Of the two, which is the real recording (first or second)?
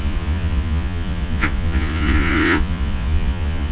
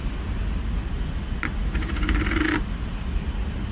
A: second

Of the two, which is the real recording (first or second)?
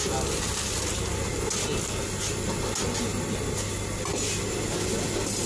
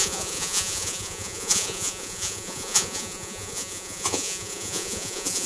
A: first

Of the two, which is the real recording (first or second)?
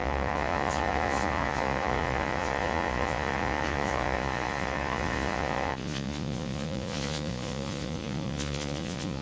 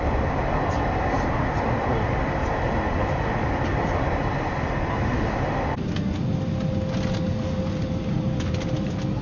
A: second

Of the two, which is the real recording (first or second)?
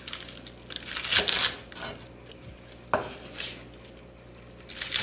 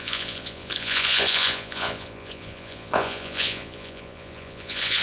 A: first